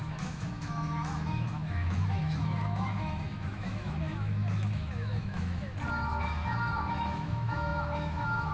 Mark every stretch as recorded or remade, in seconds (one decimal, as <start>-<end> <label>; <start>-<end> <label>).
0.0-5.7 remade; 5.7-6.9 recorded; 6.9-8.5 remade